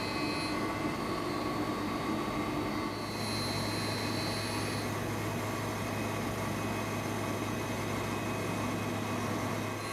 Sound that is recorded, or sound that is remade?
recorded